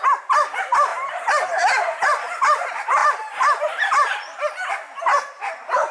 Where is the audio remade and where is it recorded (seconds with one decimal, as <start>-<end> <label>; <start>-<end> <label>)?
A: 0.0-5.9 remade